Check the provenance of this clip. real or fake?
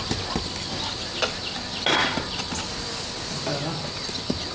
real